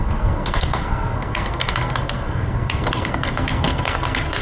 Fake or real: fake